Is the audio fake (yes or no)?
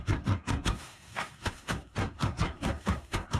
yes